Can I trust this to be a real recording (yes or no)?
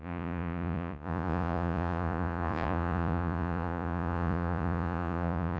no